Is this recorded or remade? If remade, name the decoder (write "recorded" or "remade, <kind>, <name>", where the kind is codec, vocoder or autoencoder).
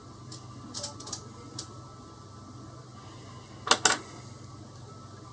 recorded